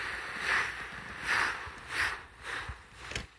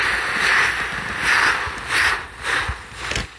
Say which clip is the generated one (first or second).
first